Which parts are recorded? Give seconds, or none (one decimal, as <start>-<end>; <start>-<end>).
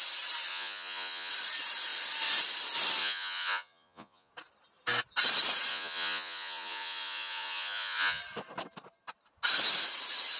0.0-0.5; 1.3-3.0; 4.3-5.7; 8.2-10.4